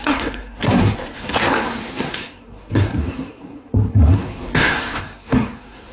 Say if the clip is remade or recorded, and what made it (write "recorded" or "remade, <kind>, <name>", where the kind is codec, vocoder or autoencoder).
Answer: remade, codec, SNAC